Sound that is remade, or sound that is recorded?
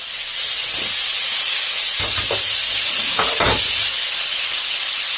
recorded